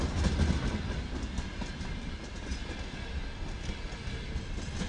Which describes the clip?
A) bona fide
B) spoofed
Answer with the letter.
A